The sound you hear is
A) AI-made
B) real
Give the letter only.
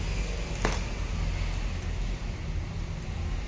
B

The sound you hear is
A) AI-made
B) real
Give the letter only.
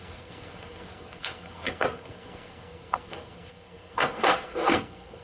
A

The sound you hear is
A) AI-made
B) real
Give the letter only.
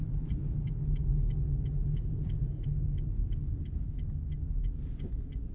B